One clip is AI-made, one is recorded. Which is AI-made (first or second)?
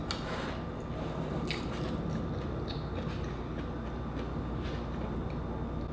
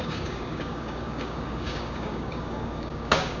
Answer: second